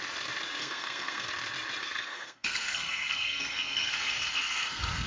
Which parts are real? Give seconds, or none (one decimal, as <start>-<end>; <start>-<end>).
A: 0.0-0.6; 1.3-1.8